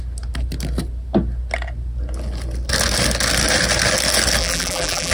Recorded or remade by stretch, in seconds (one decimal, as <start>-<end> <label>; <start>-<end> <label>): 0.0-4.4 recorded; 4.4-5.1 remade